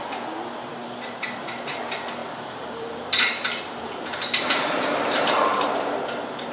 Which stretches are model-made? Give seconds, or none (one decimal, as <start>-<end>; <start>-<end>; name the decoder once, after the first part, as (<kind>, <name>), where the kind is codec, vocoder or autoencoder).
2.2-6.0 (vocoder, BigVGAN v2)